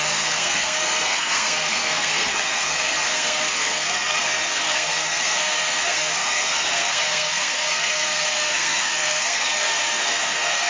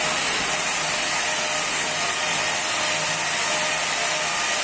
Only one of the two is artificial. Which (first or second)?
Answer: first